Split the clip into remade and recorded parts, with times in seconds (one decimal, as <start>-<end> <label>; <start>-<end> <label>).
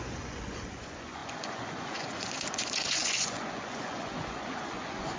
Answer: 0.0-5.2 remade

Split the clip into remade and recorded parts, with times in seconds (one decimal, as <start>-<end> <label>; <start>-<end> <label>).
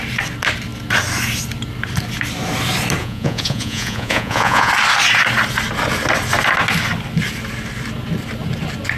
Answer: 0.0-3.0 recorded; 3.0-4.7 remade; 4.7-9.0 recorded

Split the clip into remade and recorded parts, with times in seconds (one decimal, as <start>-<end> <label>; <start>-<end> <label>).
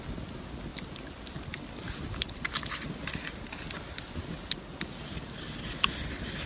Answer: 0.0-6.5 recorded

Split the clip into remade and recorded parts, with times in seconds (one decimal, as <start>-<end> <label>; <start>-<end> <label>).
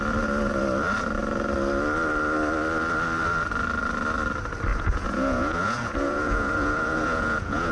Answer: 0.0-4.7 recorded; 4.7-7.7 remade